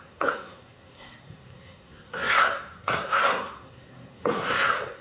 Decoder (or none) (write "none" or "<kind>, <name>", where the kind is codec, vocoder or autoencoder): codec, SNAC